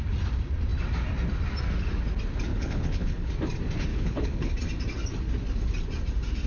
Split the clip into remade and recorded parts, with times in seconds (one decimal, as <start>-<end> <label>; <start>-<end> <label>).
0.0-2.5 recorded; 2.5-3.3 remade; 3.3-3.9 recorded; 3.9-4.5 remade; 4.5-6.5 recorded